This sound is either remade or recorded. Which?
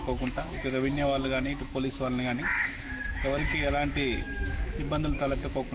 remade